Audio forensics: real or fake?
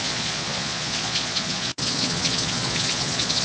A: fake